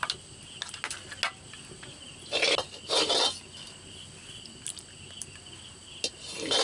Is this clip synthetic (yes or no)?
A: no